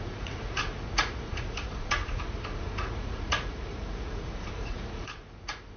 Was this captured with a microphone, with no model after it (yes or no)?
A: no